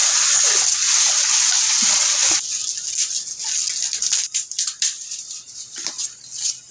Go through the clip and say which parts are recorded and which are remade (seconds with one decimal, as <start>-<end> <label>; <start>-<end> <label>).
0.0-4.0 recorded; 4.0-6.2 remade; 6.2-6.7 recorded